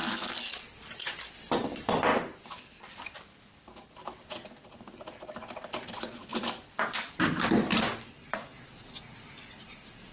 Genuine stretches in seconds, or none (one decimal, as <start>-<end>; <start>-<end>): 0.0-1.3; 2.1-5.7